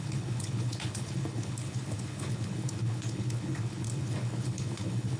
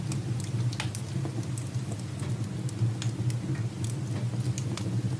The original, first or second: second